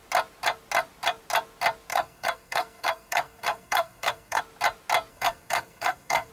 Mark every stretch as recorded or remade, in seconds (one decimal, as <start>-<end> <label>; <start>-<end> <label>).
0.0-1.9 recorded; 1.9-4.4 remade; 4.4-5.1 recorded; 5.1-6.3 remade